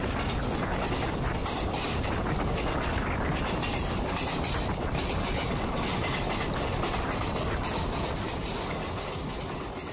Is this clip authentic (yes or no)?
yes